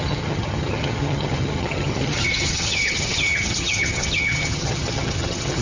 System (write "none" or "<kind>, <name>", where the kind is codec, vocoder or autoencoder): vocoder, HiFi-GAN